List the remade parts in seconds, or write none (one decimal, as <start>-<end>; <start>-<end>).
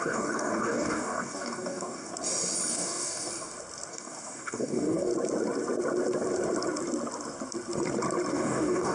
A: 0.0-2.1; 2.7-3.3; 3.9-5.1; 8.3-8.9